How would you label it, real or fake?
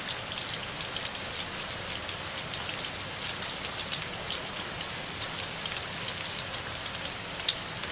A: real